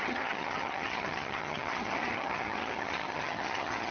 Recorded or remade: remade